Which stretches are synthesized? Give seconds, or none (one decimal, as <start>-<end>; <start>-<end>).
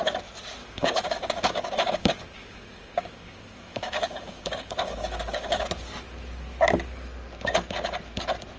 0.6-5.7